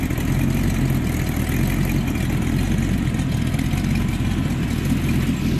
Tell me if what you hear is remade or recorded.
recorded